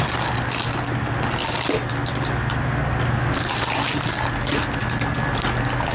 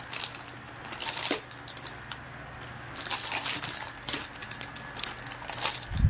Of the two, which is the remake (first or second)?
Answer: second